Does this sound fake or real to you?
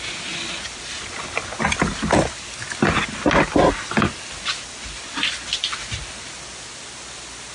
real